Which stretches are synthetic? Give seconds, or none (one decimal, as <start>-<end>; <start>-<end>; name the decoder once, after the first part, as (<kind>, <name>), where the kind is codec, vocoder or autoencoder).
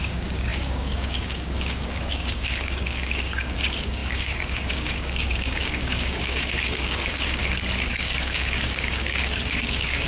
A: 0.0-7.4 (codec, DAC); 7.9-10.1